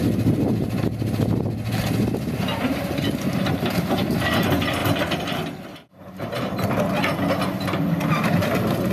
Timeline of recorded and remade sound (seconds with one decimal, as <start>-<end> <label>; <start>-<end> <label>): 0.0-8.9 recorded